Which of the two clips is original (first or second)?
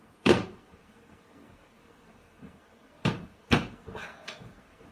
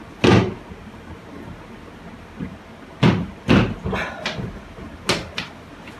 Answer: second